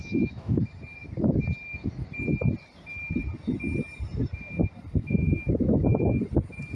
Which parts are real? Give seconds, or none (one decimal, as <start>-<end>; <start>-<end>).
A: 0.5-5.0; 6.2-6.8